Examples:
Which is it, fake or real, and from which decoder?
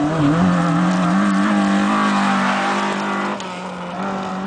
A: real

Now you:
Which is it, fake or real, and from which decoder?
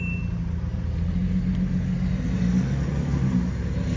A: real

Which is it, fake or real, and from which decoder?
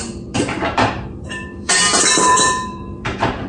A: fake, vocoder, BigVGAN v2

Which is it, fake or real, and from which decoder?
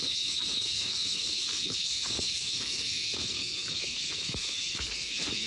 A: fake, codec, SNAC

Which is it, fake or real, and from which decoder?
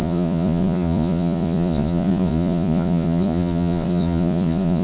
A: fake, vocoder, Vocos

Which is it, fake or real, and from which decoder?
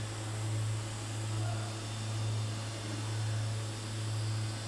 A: real